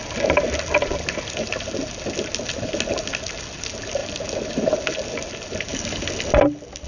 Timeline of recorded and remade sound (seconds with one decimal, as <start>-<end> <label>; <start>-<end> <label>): 0.0-6.9 recorded